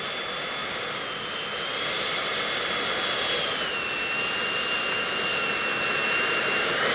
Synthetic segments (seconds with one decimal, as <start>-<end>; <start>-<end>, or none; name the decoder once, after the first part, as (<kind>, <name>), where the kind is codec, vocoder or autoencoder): 0.0-0.6 (vocoder, BigVGAN v2); 1.9-2.3; 6.4-6.9